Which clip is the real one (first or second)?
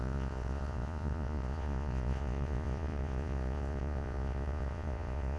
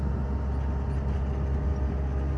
second